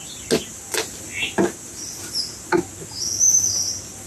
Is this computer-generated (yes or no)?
no